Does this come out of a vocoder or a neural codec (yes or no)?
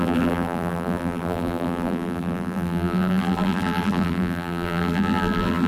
yes